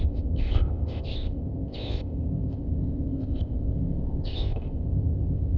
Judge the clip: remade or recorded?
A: remade